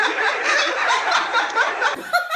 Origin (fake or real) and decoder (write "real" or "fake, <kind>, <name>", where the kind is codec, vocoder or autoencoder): fake, vocoder, BigVGAN v2